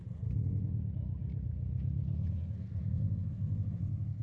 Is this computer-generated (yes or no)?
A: no